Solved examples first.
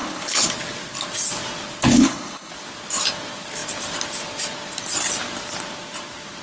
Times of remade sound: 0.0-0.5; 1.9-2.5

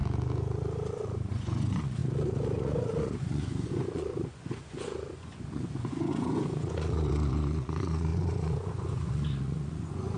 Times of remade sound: 1.3-10.2

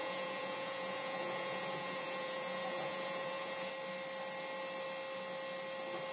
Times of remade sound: 0.0-3.7

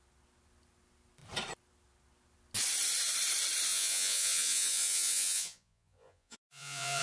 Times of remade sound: 3.7-7.0

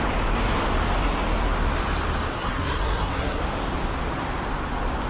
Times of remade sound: 2.3-3.4